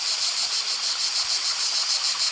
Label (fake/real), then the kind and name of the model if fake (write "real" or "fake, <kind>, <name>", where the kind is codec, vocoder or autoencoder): real